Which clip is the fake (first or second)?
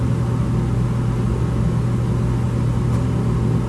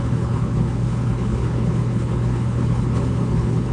second